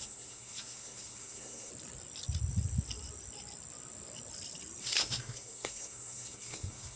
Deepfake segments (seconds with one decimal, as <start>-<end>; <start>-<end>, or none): 0.0-1.7; 4.8-7.0

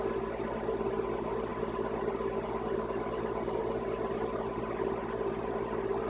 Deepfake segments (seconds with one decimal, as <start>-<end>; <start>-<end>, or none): none

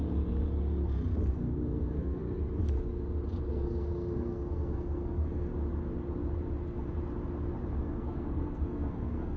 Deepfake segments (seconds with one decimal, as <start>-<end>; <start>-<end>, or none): 1.3-2.2; 3.5-5.5; 7.8-9.4

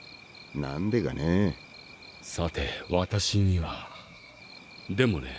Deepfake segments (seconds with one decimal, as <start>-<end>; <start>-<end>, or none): 2.9-4.4